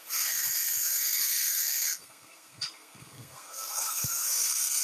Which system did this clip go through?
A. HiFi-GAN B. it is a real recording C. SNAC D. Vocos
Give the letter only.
C